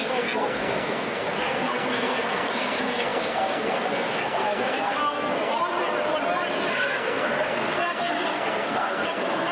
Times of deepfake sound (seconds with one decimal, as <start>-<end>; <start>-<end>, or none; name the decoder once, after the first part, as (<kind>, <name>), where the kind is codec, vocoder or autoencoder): 0.0-5.6 (codec, SNAC); 6.7-9.5

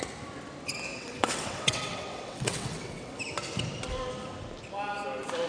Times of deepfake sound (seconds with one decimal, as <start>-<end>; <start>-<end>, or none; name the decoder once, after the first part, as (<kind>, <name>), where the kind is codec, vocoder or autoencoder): 0.9-3.2 (vocoder, WaveNeXt)